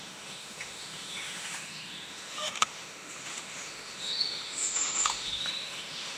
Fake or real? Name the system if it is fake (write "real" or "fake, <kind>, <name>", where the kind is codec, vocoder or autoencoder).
fake, autoencoder, DAC-VAE